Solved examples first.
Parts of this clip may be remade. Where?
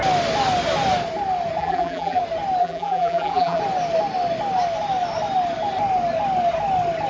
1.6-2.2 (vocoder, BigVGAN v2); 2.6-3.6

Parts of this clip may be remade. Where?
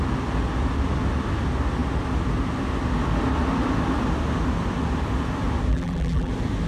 5.7-6.3 (vocoder, BigVGAN v2)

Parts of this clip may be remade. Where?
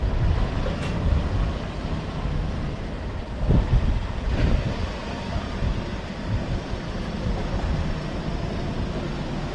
5.0-5.5 (vocoder, BigVGAN v2)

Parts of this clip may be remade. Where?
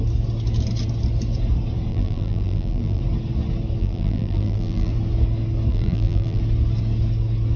1.9-3.0 (vocoder, BigVGAN v2); 3.8-4.9; 5.7-6.4